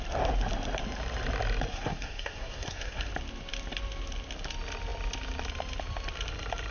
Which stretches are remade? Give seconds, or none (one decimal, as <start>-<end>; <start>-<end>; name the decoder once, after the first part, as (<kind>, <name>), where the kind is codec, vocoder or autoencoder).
1.7-3.1 (codec, SNAC)